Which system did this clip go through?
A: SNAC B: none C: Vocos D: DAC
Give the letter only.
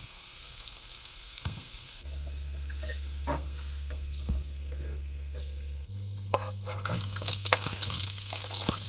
A